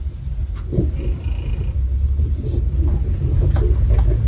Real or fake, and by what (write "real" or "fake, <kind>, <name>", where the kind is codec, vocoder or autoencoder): real